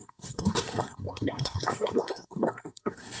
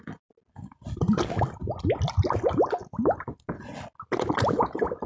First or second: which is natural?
second